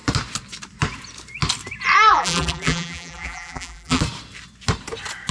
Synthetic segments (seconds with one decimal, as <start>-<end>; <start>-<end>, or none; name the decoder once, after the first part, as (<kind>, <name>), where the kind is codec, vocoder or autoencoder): 2.1-4.0 (vocoder, BigVGAN v2)